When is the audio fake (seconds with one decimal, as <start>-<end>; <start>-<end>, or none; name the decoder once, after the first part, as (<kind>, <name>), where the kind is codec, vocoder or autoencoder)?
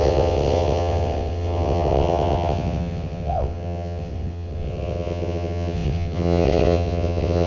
0.0-7.5 (vocoder, WaveNeXt)